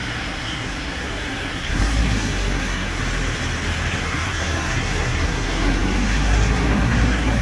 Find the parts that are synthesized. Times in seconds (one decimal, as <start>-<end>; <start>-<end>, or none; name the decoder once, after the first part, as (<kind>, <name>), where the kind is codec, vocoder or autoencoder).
0.0-3.0 (codec, SNAC); 3.9-7.4